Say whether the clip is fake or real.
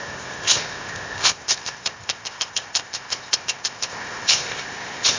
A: fake